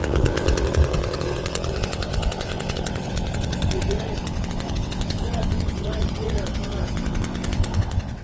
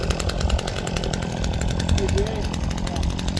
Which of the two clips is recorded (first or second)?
second